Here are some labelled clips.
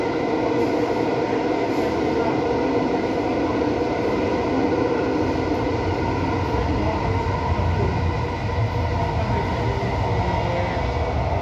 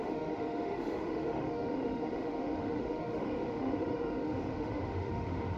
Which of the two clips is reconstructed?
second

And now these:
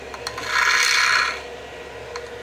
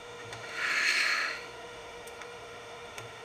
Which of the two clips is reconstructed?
second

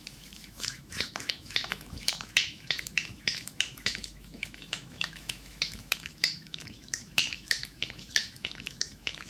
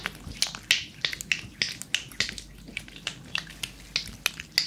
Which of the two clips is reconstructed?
first